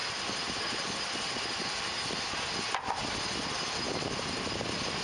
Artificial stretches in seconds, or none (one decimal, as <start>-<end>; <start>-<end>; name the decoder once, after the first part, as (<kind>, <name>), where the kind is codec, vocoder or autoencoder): none